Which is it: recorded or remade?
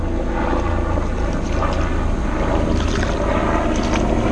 recorded